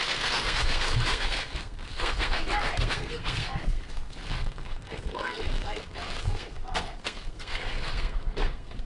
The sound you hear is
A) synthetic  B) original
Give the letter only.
A